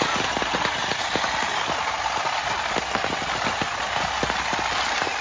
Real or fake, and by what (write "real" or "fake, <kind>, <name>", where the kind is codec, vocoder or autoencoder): real